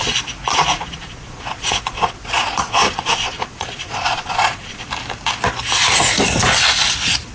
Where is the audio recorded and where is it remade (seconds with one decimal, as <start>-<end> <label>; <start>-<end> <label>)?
0.0-0.5 recorded; 0.5-4.9 remade; 4.9-7.3 recorded